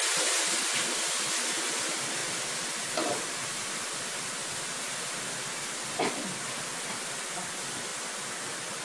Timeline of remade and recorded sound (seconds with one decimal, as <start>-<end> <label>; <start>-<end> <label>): 0.0-8.8 recorded